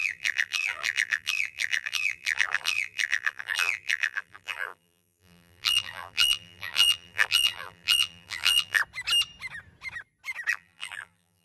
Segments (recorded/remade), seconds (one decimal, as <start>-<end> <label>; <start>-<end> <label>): 0.0-8.8 remade; 8.8-10.5 recorded; 10.5-11.4 remade